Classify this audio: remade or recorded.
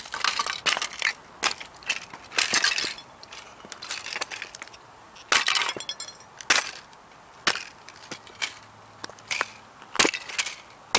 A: recorded